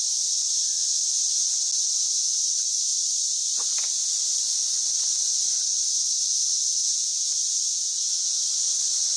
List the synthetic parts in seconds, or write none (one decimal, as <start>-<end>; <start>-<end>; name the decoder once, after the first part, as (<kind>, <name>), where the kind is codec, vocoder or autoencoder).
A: 6.8-7.3 (vocoder, Vocos); 7.7-8.3